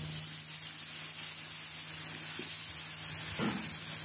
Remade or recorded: recorded